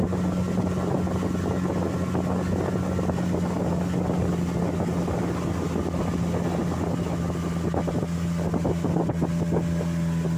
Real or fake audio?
real